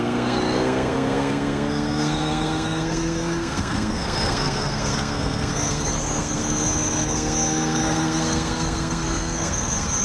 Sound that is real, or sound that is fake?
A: fake